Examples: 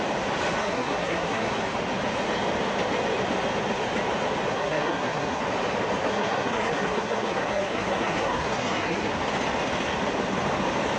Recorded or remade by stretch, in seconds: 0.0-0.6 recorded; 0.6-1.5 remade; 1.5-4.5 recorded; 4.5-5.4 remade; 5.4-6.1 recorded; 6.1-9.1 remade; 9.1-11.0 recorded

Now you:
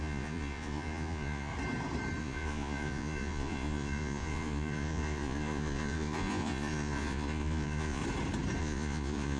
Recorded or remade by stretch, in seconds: 0.0-1.5 remade; 1.5-2.2 recorded; 2.2-8.0 remade; 8.0-8.6 recorded; 8.6-9.4 remade

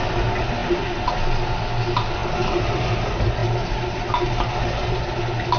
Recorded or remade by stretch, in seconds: 0.0-5.6 recorded

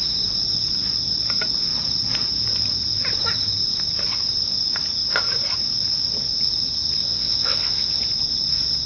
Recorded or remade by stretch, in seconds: 0.0-7.0 recorded; 7.0-8.0 remade; 8.0-8.9 recorded

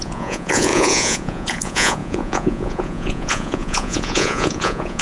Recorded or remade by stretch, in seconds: 0.0-5.0 remade

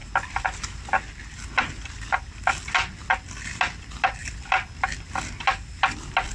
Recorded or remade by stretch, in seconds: 0.0-6.3 recorded

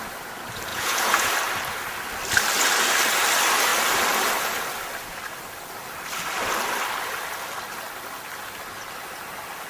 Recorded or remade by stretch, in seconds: 0.0-0.7 recorded; 0.7-1.3 remade; 1.3-9.7 recorded

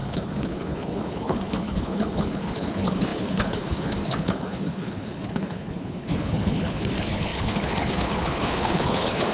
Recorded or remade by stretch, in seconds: 0.0-9.3 remade